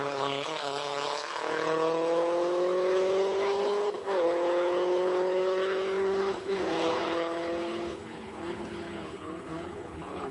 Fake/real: fake